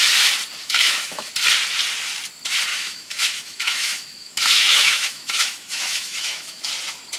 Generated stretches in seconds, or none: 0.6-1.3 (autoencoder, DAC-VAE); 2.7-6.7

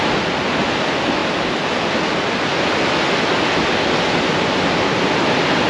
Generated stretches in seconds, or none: none

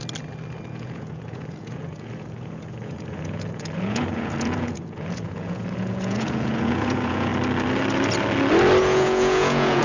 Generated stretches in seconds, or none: 0.7-7.3 (vocoder, Vocos); 8.8-9.8

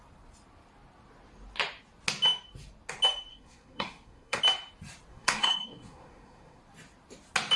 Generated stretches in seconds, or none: 3.3-4.4 (codec, SNAC); 5.1-6.6

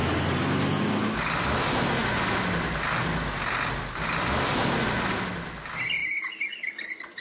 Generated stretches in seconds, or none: none